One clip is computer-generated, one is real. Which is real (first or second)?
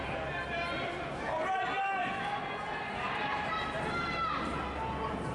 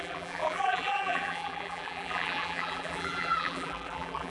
first